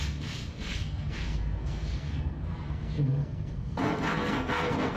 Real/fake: fake